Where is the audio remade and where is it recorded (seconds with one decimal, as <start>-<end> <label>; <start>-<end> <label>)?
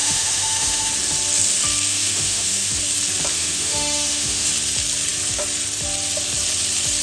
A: 0.0-0.9 remade; 0.9-1.9 recorded; 1.9-2.8 remade; 2.8-3.3 recorded; 3.3-4.5 remade; 4.5-7.0 recorded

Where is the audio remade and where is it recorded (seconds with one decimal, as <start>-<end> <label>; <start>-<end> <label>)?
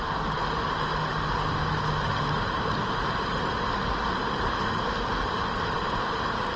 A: 0.0-6.6 recorded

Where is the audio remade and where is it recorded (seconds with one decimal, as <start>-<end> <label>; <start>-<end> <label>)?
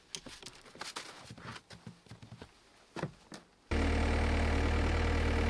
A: 0.0-5.5 recorded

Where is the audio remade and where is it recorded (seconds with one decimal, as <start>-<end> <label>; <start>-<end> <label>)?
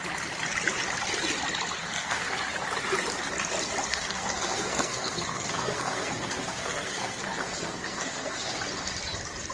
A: 0.0-1.8 recorded; 1.8-2.3 remade; 2.3-3.9 recorded; 3.9-8.5 remade; 8.5-9.5 recorded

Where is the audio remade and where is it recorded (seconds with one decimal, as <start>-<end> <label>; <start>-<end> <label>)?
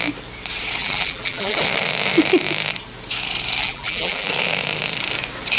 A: 0.0-0.8 recorded; 0.8-1.6 remade; 1.6-3.6 recorded; 3.6-4.3 remade; 4.3-5.6 recorded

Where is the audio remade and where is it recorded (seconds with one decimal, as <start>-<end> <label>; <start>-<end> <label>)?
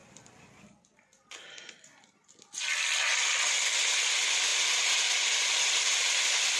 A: 0.0-6.6 recorded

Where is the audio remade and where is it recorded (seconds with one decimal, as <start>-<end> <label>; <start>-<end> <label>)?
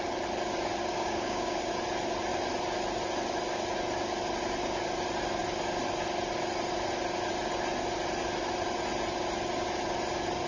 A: 0.0-0.8 recorded; 0.8-1.7 remade; 1.7-10.5 recorded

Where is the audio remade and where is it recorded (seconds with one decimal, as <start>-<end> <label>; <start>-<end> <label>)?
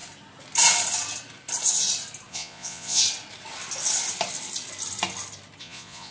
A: 0.0-2.3 recorded; 2.3-3.0 remade; 3.0-5.6 recorded; 5.6-6.1 remade